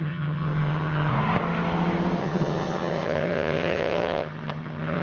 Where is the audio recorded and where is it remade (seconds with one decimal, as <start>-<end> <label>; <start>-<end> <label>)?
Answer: 0.0-1.1 remade; 1.1-2.2 recorded; 2.2-5.0 remade